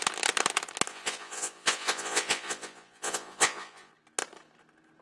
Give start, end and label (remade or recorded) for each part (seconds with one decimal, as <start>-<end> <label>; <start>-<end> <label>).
0.0-0.9 recorded; 0.9-3.9 remade; 3.9-5.0 recorded